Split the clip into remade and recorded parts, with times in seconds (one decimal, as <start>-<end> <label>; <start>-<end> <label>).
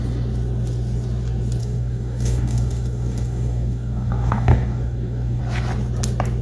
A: 0.0-1.6 recorded; 1.6-5.4 remade; 5.4-6.4 recorded